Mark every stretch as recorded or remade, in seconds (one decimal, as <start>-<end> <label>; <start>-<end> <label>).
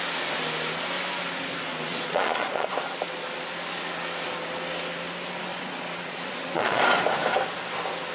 0.0-1.9 recorded; 1.9-2.7 remade; 2.7-5.5 recorded; 5.5-6.8 remade; 6.8-8.1 recorded